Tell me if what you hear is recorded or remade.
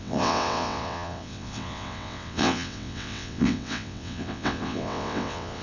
remade